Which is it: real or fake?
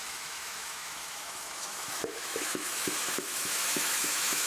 fake